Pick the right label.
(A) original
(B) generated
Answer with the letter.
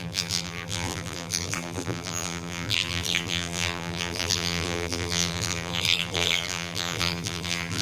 B